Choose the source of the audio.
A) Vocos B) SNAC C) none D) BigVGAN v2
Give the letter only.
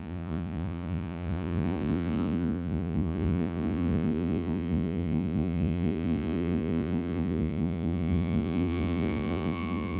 A